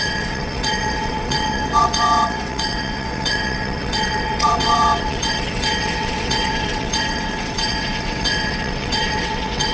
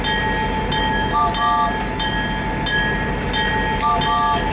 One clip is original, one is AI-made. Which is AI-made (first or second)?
first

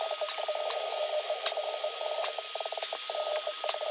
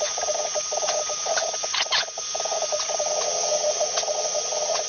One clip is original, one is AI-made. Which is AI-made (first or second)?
second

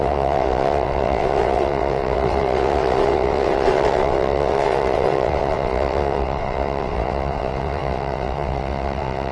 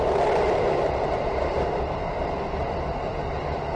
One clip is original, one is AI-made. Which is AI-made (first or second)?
first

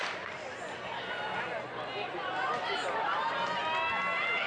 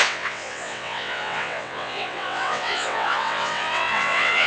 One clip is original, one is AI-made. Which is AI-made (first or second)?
second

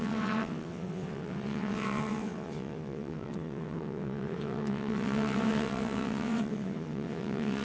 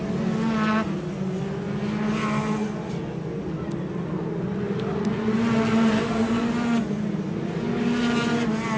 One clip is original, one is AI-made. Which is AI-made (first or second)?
first